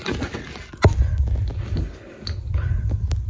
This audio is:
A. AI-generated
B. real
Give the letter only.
B